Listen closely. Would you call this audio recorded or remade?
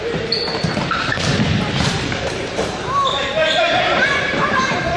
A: remade